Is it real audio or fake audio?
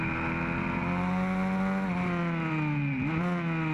real